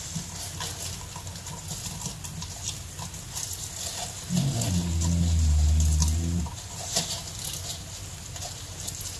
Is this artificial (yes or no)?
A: no